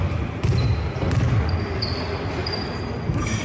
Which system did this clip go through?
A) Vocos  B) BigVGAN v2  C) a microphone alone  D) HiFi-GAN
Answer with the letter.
C